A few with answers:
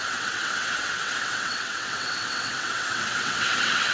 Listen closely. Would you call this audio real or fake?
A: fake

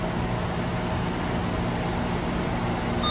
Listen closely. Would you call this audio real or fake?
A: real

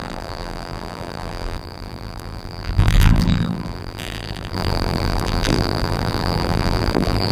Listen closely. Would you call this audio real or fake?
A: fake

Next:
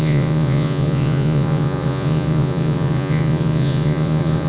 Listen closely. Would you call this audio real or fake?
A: fake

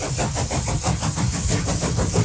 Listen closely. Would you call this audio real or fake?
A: real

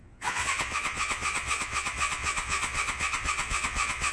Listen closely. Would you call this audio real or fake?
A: fake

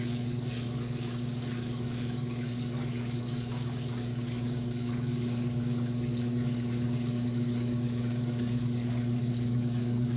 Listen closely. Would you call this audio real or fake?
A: fake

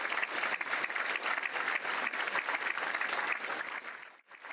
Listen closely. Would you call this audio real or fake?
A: real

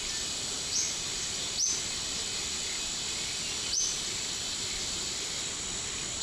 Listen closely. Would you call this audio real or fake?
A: real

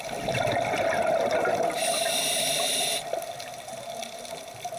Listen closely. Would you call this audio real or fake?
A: real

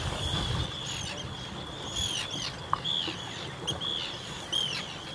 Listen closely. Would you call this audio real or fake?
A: real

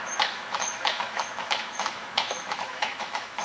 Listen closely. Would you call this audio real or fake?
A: fake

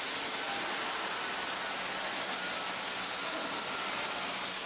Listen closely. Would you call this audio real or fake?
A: real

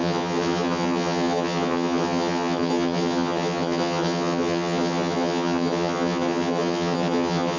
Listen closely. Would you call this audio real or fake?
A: fake